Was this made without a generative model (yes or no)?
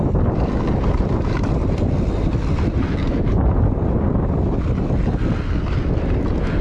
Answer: yes